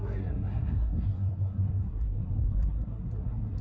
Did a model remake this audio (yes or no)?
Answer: yes